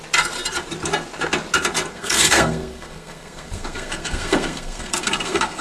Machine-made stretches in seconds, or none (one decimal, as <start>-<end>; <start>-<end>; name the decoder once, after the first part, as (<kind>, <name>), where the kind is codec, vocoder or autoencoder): 1.9-5.6 (codec, SNAC)